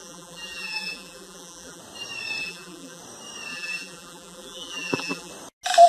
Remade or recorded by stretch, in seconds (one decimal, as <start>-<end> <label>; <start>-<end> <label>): 0.0-1.8 remade; 1.8-2.4 recorded; 2.4-3.0 remade; 3.0-3.5 recorded; 3.5-5.3 remade; 5.3-5.9 recorded